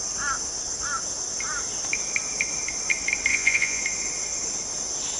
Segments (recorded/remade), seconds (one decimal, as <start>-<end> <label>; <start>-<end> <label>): 0.0-3.3 recorded; 3.3-3.8 remade; 3.8-5.2 recorded